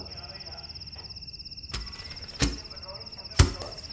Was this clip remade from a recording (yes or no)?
no